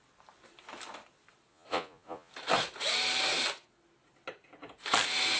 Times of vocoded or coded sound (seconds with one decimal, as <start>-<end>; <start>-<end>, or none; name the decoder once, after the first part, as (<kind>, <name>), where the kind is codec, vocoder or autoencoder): 1.5-2.3 (vocoder, Vocos)